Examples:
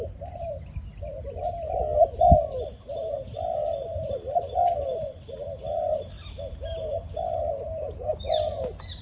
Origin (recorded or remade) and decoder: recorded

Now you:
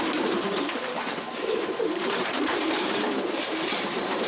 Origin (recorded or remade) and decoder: remade, vocoder, BigVGAN v2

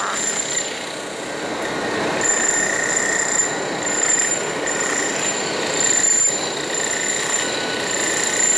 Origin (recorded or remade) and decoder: recorded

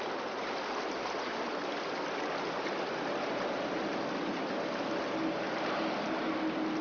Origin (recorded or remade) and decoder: recorded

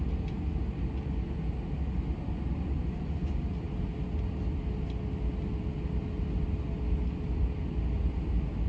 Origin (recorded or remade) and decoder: recorded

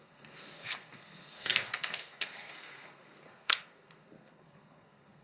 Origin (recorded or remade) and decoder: remade, codec, SNAC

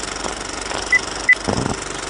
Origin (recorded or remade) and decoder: recorded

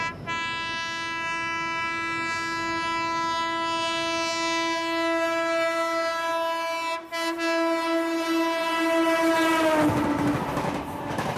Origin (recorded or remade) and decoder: recorded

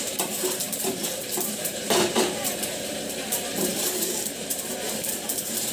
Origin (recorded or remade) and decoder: remade, vocoder, BigVGAN v2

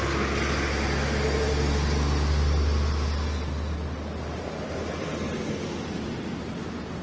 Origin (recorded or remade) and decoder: recorded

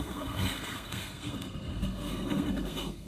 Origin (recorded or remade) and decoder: remade, codec, SNAC